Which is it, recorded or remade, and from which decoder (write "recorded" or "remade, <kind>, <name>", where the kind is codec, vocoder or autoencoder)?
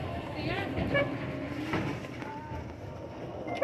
recorded